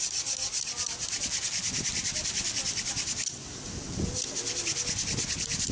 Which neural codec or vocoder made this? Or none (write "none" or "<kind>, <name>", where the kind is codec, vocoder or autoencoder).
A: none